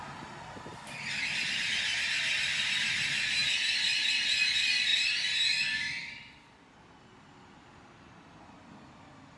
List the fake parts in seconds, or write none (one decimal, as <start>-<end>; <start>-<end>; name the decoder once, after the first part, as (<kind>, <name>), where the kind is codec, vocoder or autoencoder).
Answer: none